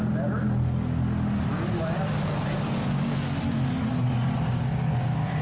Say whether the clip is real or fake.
real